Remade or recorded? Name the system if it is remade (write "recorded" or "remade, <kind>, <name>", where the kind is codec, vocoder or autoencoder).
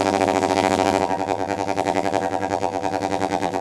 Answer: remade, vocoder, BigVGAN v2